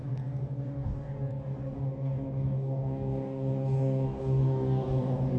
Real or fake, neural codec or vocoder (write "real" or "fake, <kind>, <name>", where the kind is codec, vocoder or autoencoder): fake, codec, DAC